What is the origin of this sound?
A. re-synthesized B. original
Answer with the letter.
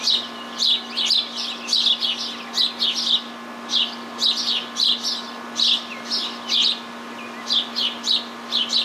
B